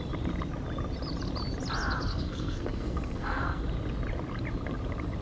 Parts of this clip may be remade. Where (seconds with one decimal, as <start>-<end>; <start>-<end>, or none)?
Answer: 2.1-3.6